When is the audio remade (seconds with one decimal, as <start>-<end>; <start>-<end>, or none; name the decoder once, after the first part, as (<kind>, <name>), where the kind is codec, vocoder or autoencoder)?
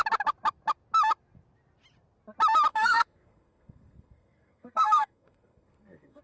2.7-6.2 (codec, SNAC)